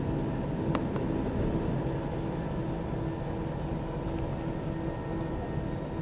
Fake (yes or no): no